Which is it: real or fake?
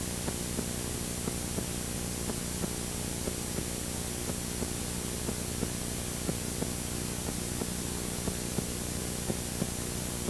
real